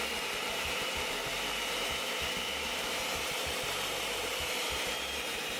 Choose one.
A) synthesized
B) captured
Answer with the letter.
A